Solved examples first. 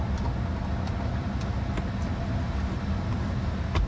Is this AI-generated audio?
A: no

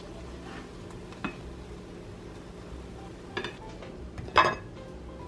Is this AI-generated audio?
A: no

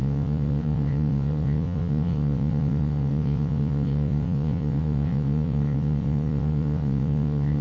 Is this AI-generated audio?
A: yes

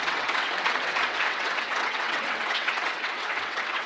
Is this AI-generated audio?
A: yes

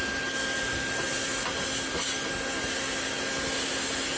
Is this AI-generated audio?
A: no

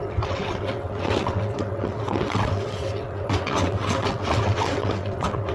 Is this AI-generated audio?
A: yes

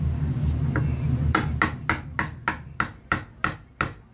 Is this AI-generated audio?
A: no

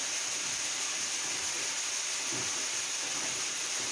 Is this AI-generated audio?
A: no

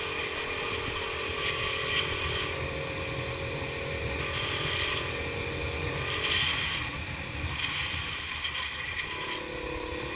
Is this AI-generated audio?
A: no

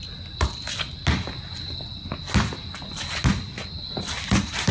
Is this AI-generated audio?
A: no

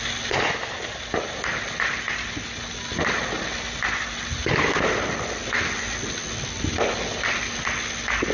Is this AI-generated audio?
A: no